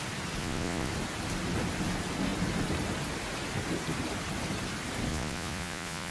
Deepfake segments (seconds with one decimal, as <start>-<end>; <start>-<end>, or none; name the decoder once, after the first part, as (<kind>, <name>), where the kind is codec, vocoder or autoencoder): 0.4-0.9 (vocoder, Vocos); 5.1-6.1